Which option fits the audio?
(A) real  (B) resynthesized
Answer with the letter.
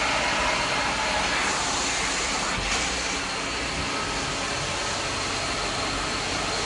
A